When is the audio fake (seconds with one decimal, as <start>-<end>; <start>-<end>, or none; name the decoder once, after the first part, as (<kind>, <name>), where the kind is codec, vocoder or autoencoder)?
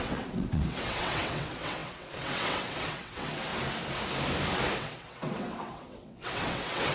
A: 0.0-3.5 (vocoder, WaveNeXt); 4.8-6.9